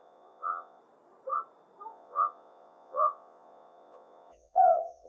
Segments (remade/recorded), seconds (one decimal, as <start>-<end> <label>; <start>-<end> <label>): 0.0-0.8 remade; 0.8-1.9 recorded; 1.9-5.1 remade